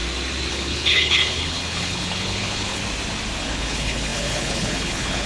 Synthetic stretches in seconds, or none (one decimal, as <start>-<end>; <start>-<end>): 0.5-2.8; 3.4-5.3

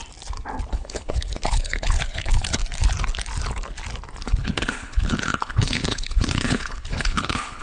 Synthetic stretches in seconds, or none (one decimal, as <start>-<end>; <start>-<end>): 0.7-2.6; 4.3-7.6

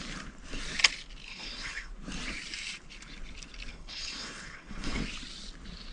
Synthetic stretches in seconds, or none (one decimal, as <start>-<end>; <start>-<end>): 1.3-1.9; 3.7-5.0

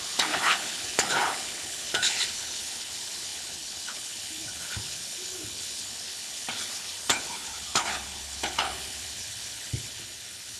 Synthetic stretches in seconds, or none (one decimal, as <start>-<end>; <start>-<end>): 0.0-10.6

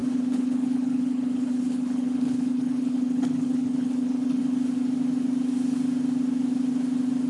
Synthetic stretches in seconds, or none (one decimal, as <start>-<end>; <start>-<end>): 0.0-4.4

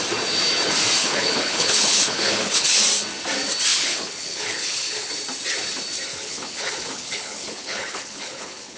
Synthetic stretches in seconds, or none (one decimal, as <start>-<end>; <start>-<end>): 1.0-2.8; 3.7-5.1; 6.1-8.8